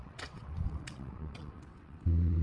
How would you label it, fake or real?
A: fake